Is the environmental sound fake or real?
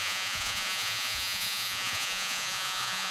fake